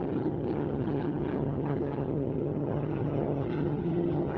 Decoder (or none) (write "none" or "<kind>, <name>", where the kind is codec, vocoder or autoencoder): vocoder, HiFi-GAN